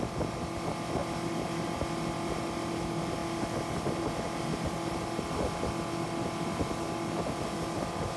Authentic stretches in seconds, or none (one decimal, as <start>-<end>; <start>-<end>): 0.0-8.2